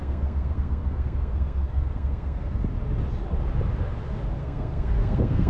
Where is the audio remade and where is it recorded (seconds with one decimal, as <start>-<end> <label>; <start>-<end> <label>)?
0.0-2.6 remade; 2.6-4.4 recorded; 4.4-5.5 remade